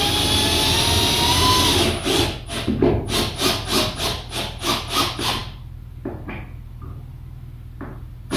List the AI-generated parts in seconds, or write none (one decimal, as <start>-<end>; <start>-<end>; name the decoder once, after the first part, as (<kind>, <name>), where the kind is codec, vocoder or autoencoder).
none